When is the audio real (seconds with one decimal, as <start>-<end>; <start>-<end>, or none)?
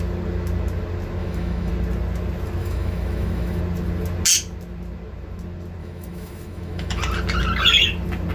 0.0-1.2; 1.7-2.6; 3.6-5.8; 7.0-8.3